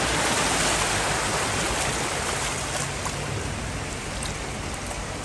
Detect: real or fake real